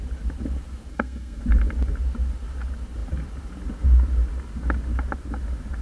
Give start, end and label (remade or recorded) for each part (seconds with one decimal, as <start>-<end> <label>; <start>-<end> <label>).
0.0-0.9 recorded; 0.9-1.4 remade; 1.4-5.8 recorded